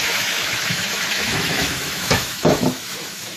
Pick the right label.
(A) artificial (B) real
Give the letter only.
A